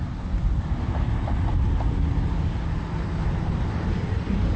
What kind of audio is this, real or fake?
real